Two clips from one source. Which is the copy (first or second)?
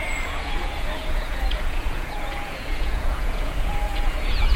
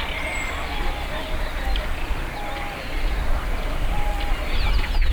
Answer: first